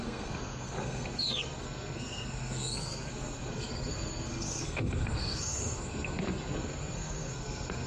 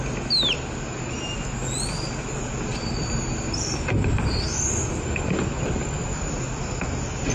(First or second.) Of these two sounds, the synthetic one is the first